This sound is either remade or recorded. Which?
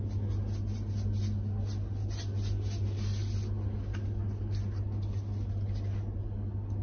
recorded